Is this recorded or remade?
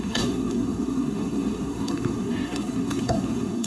remade